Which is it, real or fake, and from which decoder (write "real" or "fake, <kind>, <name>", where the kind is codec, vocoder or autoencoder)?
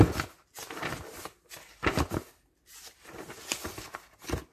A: real